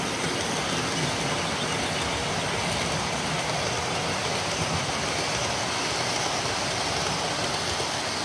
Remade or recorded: recorded